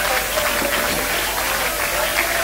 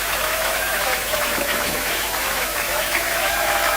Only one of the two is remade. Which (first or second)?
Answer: second